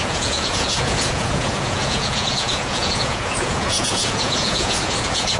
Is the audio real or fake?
fake